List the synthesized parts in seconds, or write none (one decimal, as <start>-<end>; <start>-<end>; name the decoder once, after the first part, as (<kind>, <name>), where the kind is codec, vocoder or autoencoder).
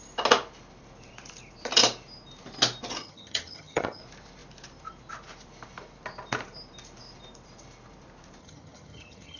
3.0-4.0 (vocoder, HiFi-GAN); 8.4-9.4